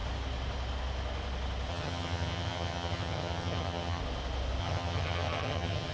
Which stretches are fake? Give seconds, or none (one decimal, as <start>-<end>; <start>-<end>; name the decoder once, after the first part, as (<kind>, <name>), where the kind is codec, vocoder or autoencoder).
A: 1.7-4.0 (vocoder, HiFi-GAN); 4.6-5.9